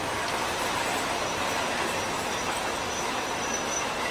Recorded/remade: recorded